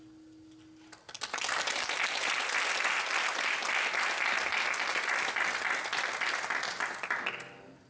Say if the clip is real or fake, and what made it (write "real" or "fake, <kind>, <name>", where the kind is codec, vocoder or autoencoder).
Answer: real